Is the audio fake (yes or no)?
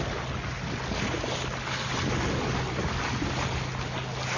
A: no